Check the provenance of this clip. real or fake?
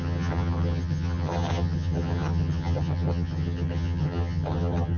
fake